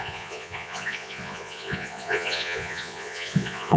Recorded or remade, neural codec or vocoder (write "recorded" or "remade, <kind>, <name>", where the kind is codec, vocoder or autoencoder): remade, vocoder, Vocos